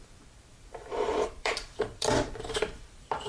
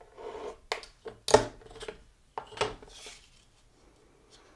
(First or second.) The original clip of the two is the second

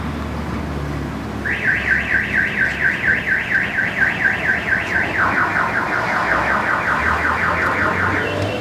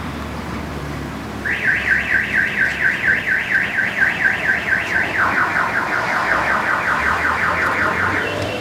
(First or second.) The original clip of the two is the first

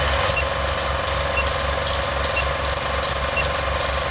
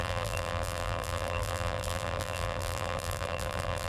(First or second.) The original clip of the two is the first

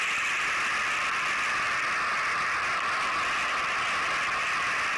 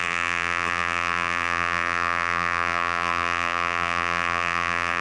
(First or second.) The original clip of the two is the first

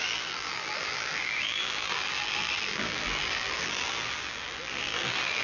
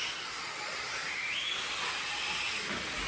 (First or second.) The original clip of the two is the second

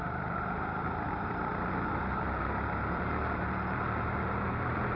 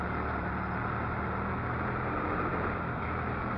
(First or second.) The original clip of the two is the second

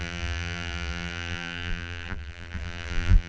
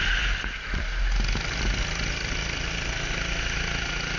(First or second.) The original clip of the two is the second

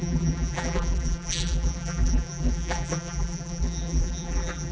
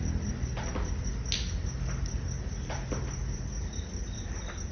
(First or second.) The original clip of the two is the second